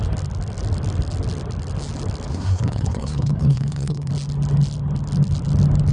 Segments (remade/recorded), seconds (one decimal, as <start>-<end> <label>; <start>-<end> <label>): 0.0-2.3 recorded; 2.3-4.1 remade; 4.1-5.9 recorded